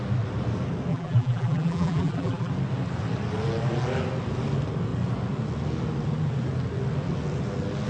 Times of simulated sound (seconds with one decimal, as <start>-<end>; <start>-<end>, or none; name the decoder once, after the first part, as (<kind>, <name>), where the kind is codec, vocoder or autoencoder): 0.9-2.5 (vocoder, BigVGAN v2)